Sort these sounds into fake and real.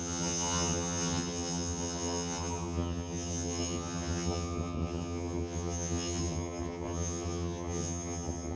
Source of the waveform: fake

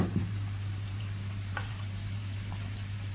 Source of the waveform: fake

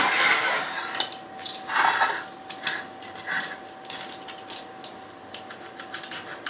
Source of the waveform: real